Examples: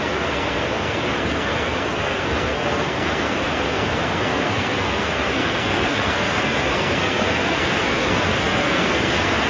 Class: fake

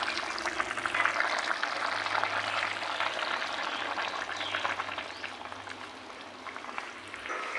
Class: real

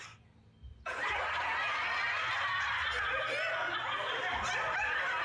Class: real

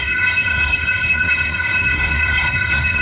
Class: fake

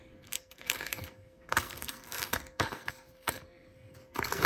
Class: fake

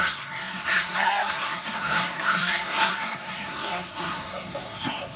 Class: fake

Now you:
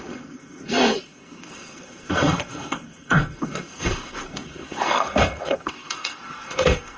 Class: fake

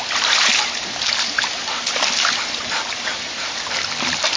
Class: real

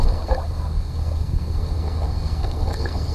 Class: fake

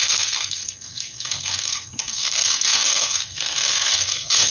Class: fake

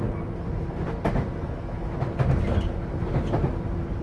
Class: real